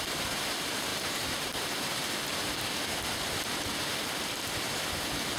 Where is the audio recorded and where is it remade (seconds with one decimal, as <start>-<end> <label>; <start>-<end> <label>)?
0.0-2.0 remade; 2.0-5.4 recorded